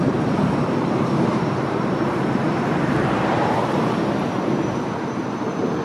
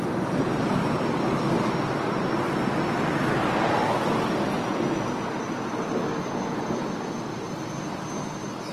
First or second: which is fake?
first